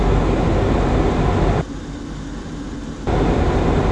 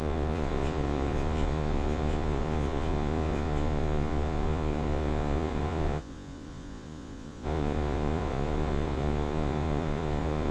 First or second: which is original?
first